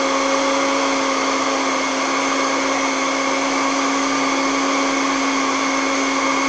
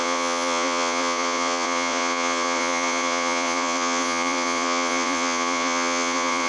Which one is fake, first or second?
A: second